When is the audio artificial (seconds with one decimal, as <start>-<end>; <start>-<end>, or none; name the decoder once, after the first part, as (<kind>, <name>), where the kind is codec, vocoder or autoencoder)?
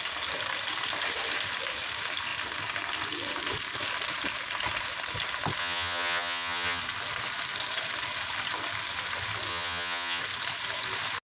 5.6-6.8 (vocoder, HiFi-GAN); 9.5-10.2